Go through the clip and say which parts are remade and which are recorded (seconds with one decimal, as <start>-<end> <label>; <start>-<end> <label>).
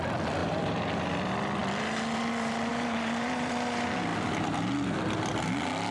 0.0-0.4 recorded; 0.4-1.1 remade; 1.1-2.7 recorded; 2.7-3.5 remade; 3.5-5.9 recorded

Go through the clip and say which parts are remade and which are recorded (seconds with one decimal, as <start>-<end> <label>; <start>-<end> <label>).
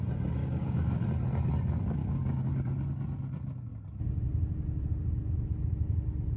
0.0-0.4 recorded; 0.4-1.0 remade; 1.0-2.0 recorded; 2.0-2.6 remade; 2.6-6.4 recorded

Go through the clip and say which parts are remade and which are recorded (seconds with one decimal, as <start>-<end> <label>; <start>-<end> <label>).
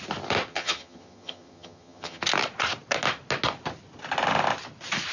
0.0-0.5 recorded; 0.5-2.2 remade; 2.2-5.1 recorded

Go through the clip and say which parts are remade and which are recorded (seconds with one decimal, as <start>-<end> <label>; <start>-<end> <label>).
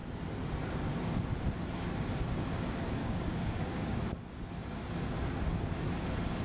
0.0-3.0 recorded; 3.0-4.0 remade; 4.0-6.4 recorded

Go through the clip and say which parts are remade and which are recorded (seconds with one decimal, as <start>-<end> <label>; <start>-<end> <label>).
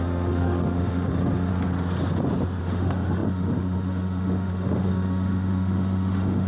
0.0-1.5 remade; 1.5-2.6 recorded; 2.6-6.5 remade